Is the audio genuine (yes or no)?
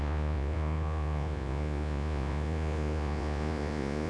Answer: no